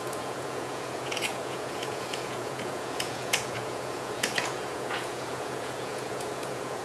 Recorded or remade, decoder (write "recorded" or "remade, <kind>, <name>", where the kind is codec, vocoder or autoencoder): remade, vocoder, Vocos